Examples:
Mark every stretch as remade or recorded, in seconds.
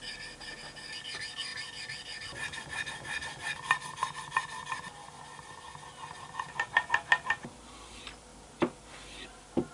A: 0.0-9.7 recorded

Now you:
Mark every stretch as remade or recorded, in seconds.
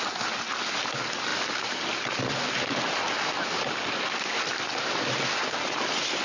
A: 0.0-6.2 recorded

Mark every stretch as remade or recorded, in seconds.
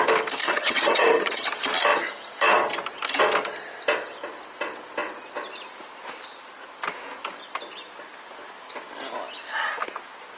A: 0.0-0.4 recorded; 0.4-1.5 remade; 1.5-10.4 recorded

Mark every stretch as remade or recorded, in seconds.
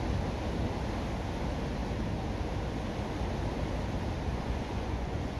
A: 0.0-4.3 recorded; 4.3-5.4 remade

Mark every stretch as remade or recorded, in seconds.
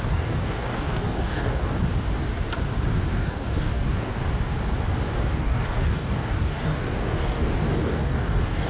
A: 0.0-1.8 remade; 1.8-3.1 recorded; 3.1-4.1 remade; 4.1-5.3 recorded; 5.3-8.7 remade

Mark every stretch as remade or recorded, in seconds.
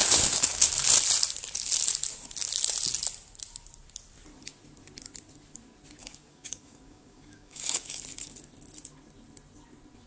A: 0.0-0.7 remade; 0.7-6.0 recorded; 6.0-8.0 remade; 8.0-10.1 recorded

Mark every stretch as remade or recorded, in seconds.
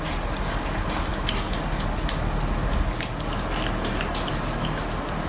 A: 0.0-5.3 recorded